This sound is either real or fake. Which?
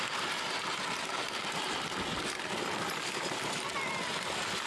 real